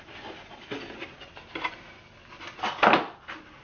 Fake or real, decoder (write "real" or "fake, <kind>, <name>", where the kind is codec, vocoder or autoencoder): real